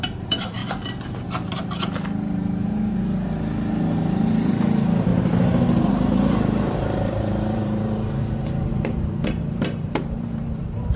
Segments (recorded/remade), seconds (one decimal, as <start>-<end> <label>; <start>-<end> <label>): 0.0-0.6 remade; 0.6-4.5 recorded; 4.5-5.1 remade; 5.1-5.9 recorded; 5.9-11.0 remade